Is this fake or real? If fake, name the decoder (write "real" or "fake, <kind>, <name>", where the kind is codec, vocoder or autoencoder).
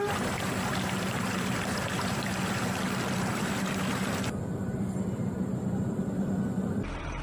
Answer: fake, vocoder, BigVGAN v2